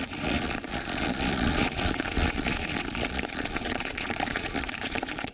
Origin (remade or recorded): remade